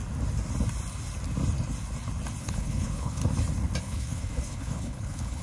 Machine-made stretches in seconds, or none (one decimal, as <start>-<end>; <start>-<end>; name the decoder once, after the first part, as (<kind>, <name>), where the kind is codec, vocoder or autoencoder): 2.4-3.2 (codec, HILCodec); 3.8-5.4